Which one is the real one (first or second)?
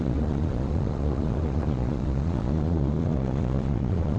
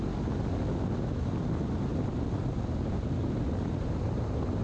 second